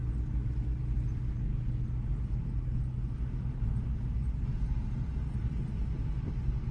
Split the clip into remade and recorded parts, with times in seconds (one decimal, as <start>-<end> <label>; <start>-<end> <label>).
0.0-6.7 recorded